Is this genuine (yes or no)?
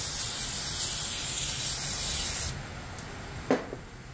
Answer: yes